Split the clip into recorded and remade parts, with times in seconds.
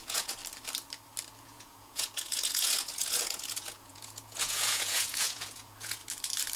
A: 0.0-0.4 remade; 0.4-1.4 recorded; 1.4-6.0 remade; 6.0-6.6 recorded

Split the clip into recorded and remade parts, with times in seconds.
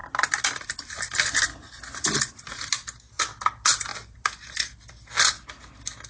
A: 0.0-6.1 recorded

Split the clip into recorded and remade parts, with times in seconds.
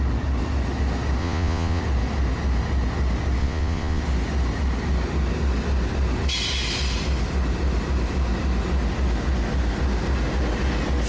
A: 0.0-1.2 recorded; 1.2-1.8 remade; 1.8-3.4 recorded; 3.4-4.0 remade; 4.0-11.1 recorded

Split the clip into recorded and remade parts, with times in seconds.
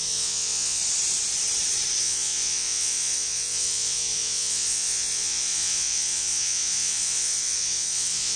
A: 0.0-0.8 remade; 0.8-2.0 recorded; 2.0-8.4 remade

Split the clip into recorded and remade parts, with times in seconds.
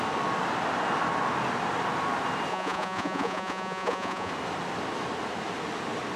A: 0.0-2.5 recorded; 2.5-4.3 remade; 4.3-6.2 recorded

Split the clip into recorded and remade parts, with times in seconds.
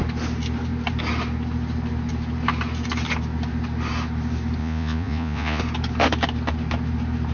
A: 0.0-4.6 recorded; 4.6-5.6 remade; 5.6-7.3 recorded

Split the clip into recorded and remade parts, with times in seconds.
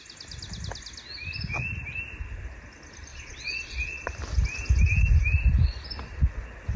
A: 0.0-3.1 recorded; 3.1-4.1 remade; 4.1-6.8 recorded